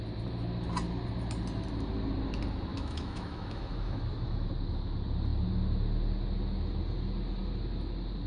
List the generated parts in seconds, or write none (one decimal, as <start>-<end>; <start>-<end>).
2.7-4.5